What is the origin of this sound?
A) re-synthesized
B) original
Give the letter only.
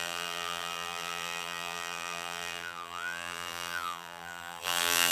A